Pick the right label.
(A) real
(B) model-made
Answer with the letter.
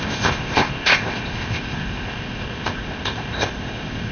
B